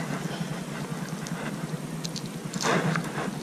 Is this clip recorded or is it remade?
recorded